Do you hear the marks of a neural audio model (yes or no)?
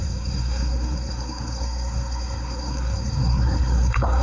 yes